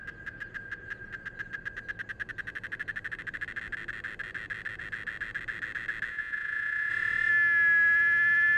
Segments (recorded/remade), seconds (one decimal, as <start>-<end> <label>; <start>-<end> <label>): 0.0-6.1 recorded; 6.1-6.9 remade; 6.9-8.6 recorded